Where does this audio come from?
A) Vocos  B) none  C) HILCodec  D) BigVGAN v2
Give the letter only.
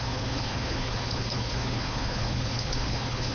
C